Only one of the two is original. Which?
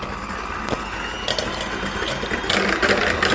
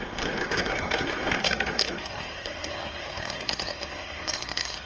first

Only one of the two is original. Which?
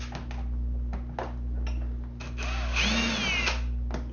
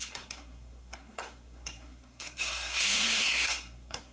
first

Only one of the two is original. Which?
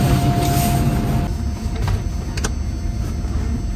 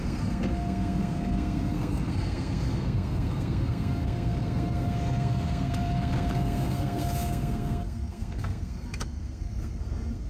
first